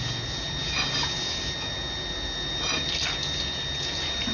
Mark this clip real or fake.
real